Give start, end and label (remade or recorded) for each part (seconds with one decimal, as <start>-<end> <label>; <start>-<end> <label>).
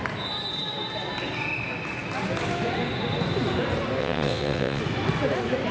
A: 0.0-4.0 recorded; 4.0-4.8 remade; 4.8-5.7 recorded